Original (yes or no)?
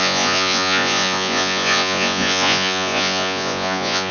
no